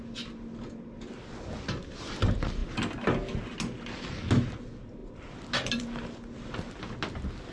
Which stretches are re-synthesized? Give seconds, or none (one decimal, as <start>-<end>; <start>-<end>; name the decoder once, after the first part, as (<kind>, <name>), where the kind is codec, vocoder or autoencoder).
none